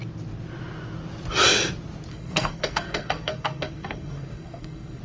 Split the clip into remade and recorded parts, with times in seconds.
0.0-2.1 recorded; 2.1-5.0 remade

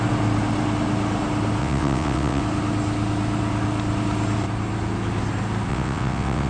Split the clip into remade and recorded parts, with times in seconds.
0.0-1.6 recorded; 1.6-2.4 remade; 2.4-5.7 recorded; 5.7-6.5 remade

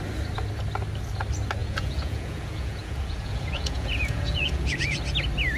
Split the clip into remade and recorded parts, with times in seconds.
0.0-1.6 recorded; 1.6-5.0 remade; 5.0-5.6 recorded

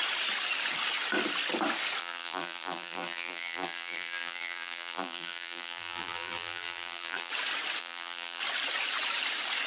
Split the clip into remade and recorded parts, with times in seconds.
0.0-2.0 recorded; 2.0-7.3 remade; 7.3-7.8 recorded; 7.8-8.4 remade; 8.4-9.7 recorded

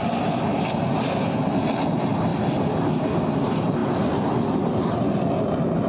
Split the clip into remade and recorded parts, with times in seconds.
0.0-5.9 recorded

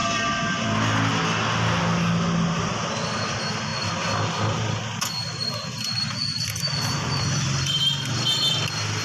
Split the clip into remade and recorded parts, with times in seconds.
0.0-9.0 recorded

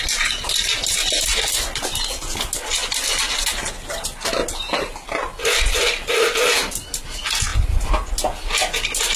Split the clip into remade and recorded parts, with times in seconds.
0.0-9.2 recorded

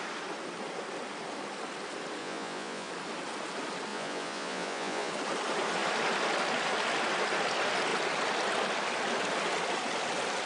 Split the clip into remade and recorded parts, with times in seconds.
0.0-2.2 recorded; 2.2-2.9 remade; 2.9-3.9 recorded; 3.9-5.1 remade; 5.1-10.5 recorded